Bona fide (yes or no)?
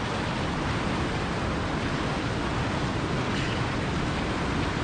yes